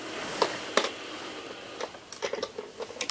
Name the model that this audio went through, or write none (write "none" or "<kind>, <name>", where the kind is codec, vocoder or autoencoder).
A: vocoder, BigVGAN v2